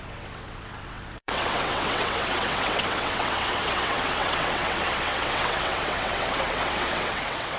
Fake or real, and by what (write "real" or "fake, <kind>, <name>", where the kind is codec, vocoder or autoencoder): fake, vocoder, WaveNeXt